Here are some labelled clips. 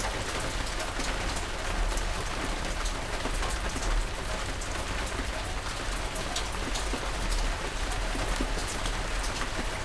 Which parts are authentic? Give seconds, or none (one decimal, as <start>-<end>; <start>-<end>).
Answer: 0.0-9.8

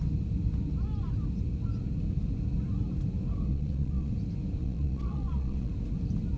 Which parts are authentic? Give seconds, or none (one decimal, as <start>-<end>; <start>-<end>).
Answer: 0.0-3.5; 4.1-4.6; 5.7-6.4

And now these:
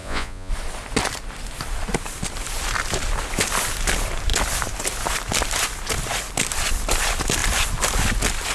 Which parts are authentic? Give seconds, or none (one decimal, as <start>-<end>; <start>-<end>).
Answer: 0.5-8.5

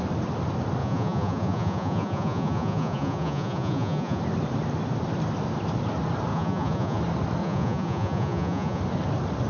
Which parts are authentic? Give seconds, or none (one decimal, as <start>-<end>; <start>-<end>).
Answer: 0.0-0.8; 4.2-6.3; 7.0-7.4; 8.8-9.5

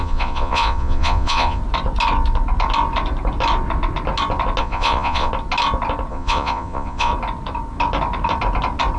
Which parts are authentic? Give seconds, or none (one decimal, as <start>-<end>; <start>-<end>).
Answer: 1.6-4.6; 5.3-6.1; 7.1-9.0

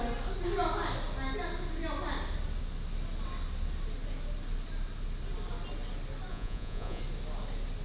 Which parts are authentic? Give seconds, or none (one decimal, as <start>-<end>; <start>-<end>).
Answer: 0.0-6.3; 7.0-7.8

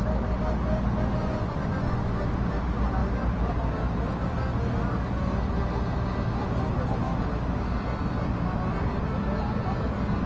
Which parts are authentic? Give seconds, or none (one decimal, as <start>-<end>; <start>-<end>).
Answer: 0.0-1.2; 2.2-10.3

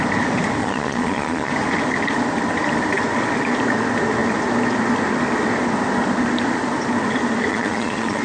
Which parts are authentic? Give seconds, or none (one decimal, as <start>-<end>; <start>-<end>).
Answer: 0.0-0.6; 1.5-7.5